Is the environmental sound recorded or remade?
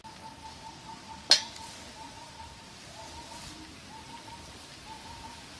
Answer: recorded